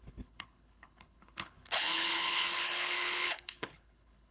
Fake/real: fake